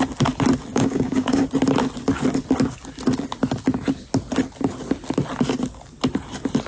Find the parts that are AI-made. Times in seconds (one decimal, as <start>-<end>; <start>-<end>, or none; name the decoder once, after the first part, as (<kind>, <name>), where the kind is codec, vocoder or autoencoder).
0.7-1.4 (codec, DAC)